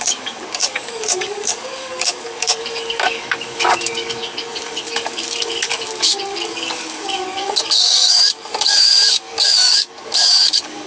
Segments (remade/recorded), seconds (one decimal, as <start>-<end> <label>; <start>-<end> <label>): 0.0-10.9 remade